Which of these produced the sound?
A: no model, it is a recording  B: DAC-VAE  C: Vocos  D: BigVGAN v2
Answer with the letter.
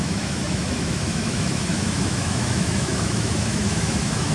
B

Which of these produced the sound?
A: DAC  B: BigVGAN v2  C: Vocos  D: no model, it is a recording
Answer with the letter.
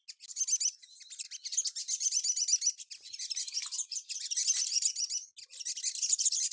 D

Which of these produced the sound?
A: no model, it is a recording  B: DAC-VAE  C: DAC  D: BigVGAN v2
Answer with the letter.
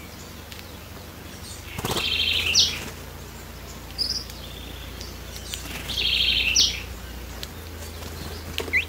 A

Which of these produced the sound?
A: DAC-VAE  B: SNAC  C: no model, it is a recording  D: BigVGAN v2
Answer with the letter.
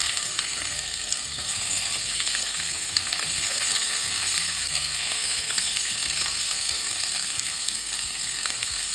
B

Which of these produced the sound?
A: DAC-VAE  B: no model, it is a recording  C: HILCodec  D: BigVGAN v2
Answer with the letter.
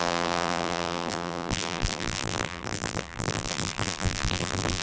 D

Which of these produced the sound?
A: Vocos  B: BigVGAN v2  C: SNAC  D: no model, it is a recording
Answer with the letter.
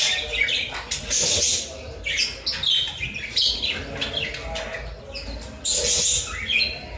D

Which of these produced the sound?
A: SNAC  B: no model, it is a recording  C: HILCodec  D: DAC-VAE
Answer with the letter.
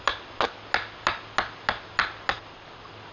B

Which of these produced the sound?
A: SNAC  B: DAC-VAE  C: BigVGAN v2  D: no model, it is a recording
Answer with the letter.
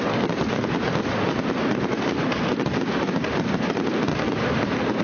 D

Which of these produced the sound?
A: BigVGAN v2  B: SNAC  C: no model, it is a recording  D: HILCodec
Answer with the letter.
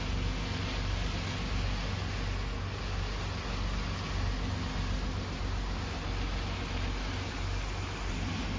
C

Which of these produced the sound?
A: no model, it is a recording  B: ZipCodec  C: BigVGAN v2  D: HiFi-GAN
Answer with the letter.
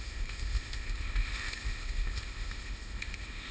B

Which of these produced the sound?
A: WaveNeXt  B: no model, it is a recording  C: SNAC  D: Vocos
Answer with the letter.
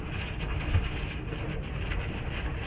B